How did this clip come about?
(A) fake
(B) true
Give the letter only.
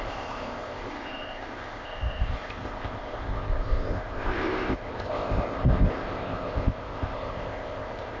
A